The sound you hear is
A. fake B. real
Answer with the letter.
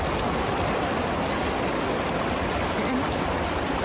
B